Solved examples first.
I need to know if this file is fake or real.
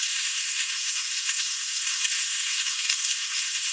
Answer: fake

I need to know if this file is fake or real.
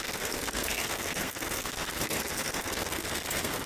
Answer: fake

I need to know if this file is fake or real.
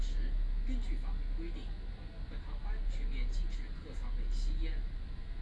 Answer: real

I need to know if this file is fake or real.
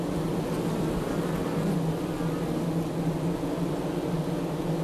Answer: real